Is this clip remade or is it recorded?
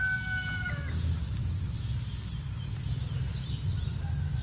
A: recorded